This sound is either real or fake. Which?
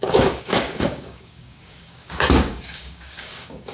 fake